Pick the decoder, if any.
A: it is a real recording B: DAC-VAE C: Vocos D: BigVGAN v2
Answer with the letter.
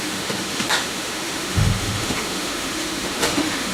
B